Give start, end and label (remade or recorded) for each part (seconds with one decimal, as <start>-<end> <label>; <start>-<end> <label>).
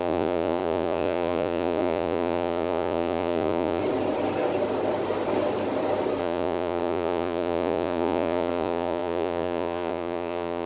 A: 0.0-3.8 remade; 3.8-6.2 recorded; 6.2-10.7 remade